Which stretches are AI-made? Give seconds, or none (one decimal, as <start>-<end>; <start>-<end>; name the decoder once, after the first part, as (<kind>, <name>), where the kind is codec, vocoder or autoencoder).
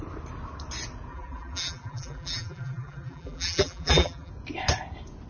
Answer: 1.1-4.3 (vocoder, BigVGAN v2)